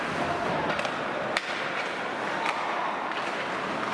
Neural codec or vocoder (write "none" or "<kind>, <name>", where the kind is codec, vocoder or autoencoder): none